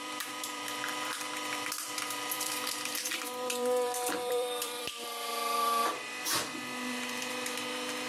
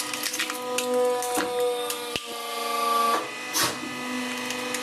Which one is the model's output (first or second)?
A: first